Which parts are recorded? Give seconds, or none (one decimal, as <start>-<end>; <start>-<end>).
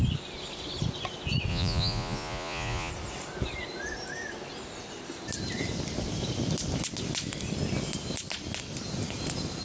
0.0-1.5; 2.9-9.6